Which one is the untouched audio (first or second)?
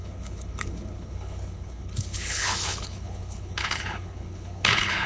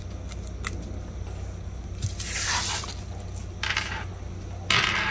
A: second